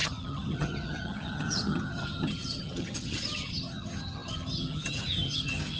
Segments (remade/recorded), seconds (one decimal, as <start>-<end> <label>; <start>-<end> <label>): 0.0-5.8 remade